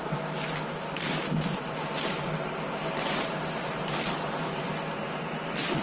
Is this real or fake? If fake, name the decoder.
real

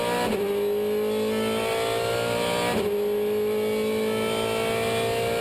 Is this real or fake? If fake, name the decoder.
real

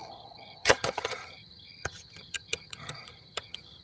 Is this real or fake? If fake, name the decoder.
fake, vocoder, HiFi-GAN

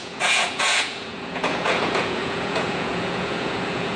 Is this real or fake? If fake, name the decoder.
fake, vocoder, Vocos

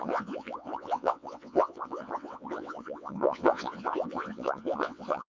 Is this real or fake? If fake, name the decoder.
fake, vocoder, WaveNeXt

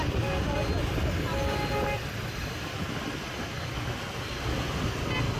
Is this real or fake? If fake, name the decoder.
real